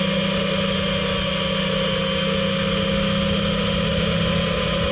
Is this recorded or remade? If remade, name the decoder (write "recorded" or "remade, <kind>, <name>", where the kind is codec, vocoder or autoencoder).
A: recorded